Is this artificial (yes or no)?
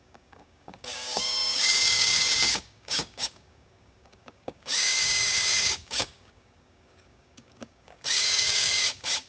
yes